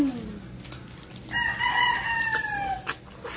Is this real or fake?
real